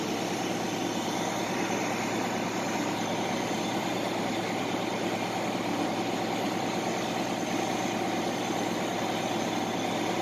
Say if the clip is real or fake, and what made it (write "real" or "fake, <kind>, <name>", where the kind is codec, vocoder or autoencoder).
real